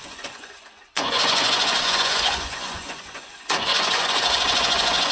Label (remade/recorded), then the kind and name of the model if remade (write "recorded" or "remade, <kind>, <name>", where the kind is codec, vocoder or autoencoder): remade, vocoder, Vocos